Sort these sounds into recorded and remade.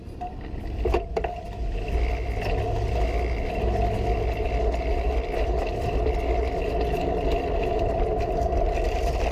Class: recorded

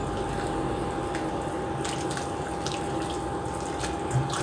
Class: recorded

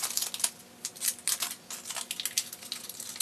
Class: recorded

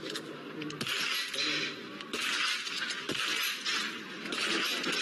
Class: recorded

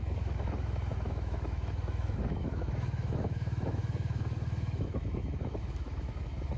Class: remade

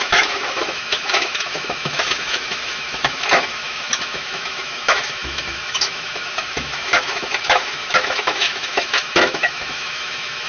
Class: remade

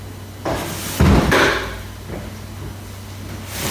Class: recorded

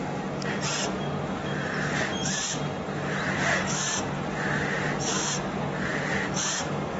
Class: recorded